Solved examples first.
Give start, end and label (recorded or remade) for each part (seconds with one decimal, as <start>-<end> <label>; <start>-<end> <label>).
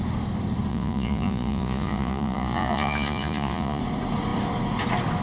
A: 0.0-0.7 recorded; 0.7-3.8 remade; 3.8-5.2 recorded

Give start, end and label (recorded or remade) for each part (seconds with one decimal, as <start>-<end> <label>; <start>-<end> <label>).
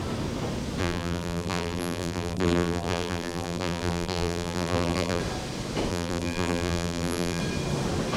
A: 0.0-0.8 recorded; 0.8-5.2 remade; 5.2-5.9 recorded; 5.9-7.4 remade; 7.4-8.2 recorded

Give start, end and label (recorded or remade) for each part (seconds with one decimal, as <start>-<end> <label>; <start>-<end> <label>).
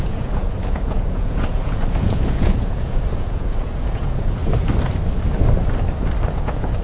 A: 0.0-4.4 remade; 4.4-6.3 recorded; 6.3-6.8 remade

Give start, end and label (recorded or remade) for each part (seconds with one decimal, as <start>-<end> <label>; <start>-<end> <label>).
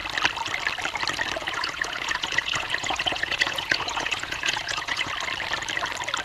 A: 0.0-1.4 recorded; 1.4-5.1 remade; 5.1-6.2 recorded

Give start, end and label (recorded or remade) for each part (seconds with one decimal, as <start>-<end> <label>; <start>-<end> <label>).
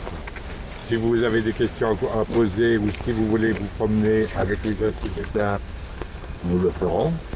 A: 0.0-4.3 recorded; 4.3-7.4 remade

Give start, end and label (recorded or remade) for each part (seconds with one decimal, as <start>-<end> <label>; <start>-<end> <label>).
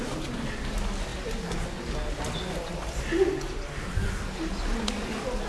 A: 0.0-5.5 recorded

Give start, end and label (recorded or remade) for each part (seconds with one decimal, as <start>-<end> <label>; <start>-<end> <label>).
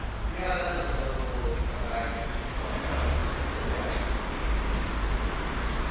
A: 0.0-5.9 recorded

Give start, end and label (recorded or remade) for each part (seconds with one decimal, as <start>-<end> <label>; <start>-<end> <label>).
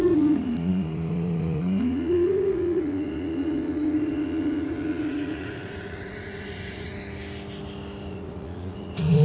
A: 0.0-7.0 remade; 7.0-8.1 recorded; 8.1-9.2 remade